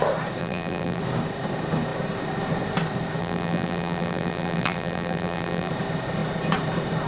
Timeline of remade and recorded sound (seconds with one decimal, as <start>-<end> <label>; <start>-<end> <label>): 0.0-0.4 recorded; 0.4-1.0 remade; 1.0-3.2 recorded; 3.2-5.7 remade; 5.7-7.1 recorded